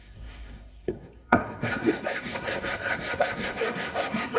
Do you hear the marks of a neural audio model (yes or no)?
yes